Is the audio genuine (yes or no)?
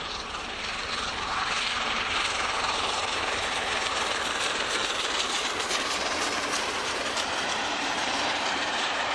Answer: no